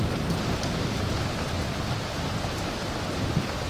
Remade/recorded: recorded